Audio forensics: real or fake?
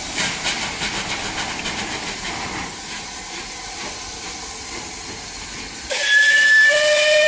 fake